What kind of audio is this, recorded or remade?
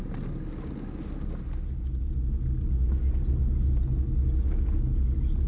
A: recorded